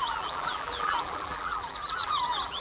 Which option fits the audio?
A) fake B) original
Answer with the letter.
A